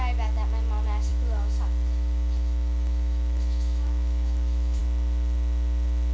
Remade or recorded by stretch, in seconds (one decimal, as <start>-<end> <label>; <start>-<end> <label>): 0.0-1.1 recorded; 1.1-4.8 remade; 4.8-6.1 recorded